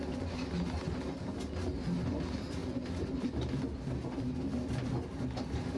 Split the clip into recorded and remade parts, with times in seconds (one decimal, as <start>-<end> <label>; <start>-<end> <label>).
0.0-5.8 recorded